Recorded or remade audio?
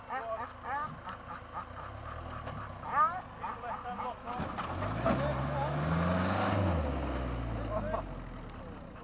recorded